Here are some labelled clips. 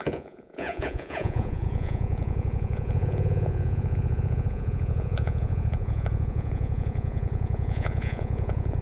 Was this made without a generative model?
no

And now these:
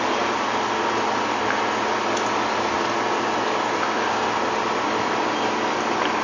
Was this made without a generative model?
yes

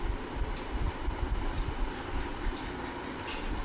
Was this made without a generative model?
yes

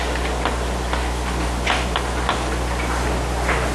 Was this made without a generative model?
yes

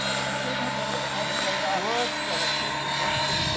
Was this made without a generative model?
yes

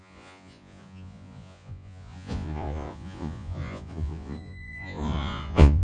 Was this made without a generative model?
no